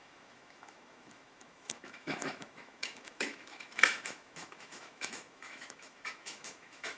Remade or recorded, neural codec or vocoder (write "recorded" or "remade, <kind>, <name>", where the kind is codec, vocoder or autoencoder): remade, autoencoder, DAC-VAE